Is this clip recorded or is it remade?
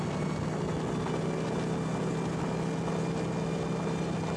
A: recorded